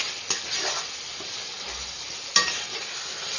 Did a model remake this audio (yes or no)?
no